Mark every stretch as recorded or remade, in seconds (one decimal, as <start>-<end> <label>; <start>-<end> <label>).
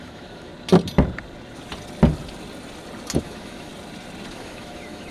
0.0-0.5 remade; 0.5-3.2 recorded; 3.2-3.7 remade; 3.7-4.3 recorded; 4.3-5.1 remade